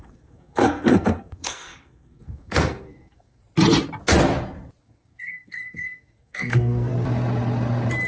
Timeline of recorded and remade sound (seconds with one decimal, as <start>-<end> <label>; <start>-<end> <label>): 0.0-3.4 remade; 3.4-4.8 recorded; 4.8-6.9 remade; 6.9-8.1 recorded